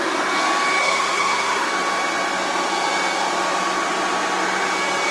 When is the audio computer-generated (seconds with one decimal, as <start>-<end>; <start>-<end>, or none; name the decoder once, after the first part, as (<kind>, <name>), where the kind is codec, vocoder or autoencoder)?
0.8-1.7 (codec, SNAC)

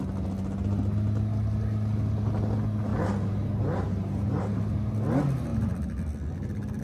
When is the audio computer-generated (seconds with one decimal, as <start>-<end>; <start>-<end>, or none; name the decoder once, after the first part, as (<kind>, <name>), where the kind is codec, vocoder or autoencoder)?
2.9-4.4 (vocoder, BigVGAN v2)

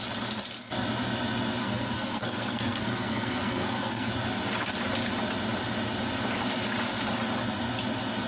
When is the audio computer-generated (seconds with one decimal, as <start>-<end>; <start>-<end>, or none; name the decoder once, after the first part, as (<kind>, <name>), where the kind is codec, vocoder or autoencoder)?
1.6-4.1 (codec, SNAC)

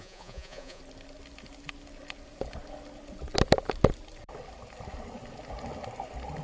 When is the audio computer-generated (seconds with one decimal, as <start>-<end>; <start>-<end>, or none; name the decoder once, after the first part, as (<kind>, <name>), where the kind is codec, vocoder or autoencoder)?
0.0-0.8 (vocoder, Vocos)

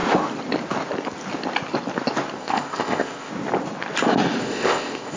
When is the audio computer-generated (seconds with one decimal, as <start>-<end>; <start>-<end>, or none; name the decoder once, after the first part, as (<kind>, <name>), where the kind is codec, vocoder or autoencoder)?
2.4-3.3 (codec, ZipCodec); 4.4-5.2

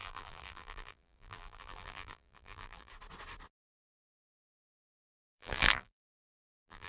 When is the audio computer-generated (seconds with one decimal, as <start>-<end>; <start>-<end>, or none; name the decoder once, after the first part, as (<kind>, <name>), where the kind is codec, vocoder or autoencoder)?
0.0-2.9 (vocoder, BigVGAN v2); 3.5-6.9